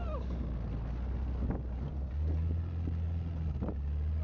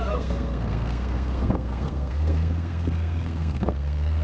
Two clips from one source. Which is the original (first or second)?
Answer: first